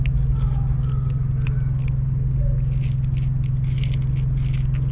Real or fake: real